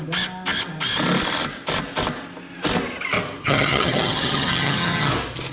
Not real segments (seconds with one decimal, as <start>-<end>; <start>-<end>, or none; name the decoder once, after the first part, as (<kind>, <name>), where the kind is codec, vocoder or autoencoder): 3.4-5.1 (vocoder, HiFi-GAN)